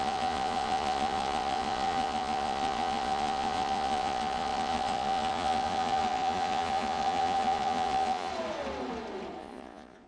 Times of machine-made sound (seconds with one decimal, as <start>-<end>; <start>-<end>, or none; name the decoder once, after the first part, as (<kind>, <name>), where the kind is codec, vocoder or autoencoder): 0.0-8.3 (vocoder, Vocos); 9.4-10.1